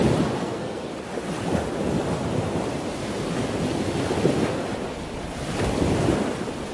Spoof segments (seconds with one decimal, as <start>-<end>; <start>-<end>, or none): 0.4-0.9